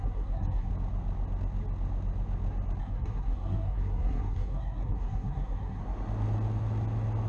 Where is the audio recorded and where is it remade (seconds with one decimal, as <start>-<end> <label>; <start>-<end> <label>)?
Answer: 0.0-0.7 remade; 0.7-2.8 recorded; 2.8-5.8 remade; 5.8-7.3 recorded